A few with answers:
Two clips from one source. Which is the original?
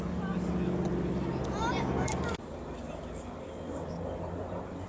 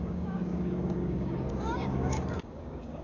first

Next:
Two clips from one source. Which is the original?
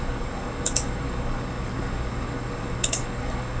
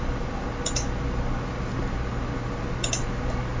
second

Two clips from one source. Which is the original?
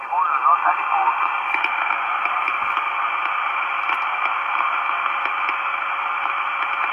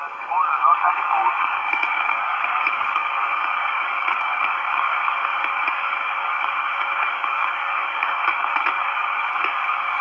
first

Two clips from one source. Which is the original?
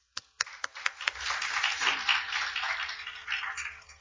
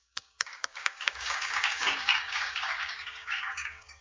first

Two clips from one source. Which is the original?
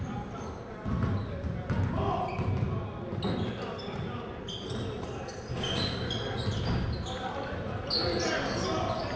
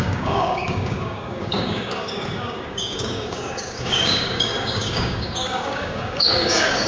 first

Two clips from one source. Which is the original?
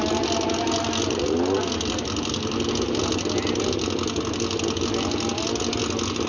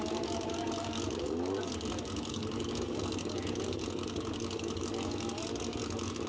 first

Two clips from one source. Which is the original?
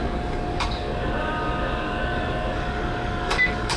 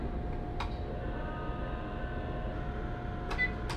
second